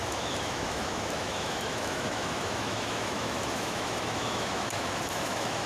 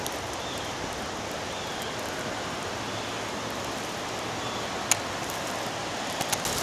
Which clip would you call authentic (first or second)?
second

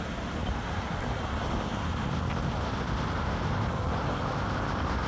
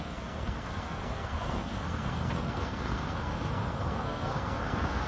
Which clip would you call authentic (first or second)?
first